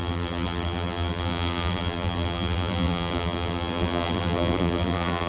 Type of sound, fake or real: fake